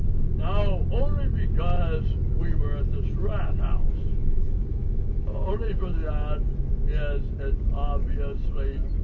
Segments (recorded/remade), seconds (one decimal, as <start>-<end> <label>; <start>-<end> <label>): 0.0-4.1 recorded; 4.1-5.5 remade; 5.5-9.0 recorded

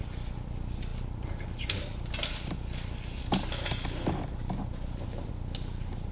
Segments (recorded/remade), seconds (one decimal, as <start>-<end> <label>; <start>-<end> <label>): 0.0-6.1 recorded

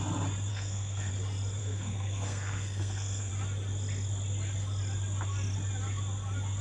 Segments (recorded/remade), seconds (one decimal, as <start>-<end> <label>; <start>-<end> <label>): 0.0-0.5 recorded; 0.5-1.1 remade; 1.1-1.6 recorded; 1.6-3.3 remade; 3.3-6.6 recorded